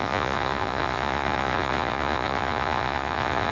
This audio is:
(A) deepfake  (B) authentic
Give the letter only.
A